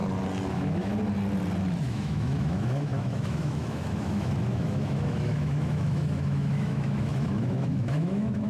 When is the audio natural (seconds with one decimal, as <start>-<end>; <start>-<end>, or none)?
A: 0.0-0.5; 0.9-1.8